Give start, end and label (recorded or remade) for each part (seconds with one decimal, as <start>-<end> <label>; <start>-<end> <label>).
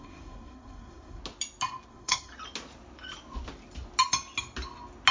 0.0-1.2 remade; 1.2-1.9 recorded; 1.9-2.3 remade; 2.3-5.1 recorded